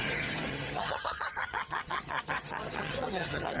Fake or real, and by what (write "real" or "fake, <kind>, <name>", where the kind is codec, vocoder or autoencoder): fake, vocoder, HiFi-GAN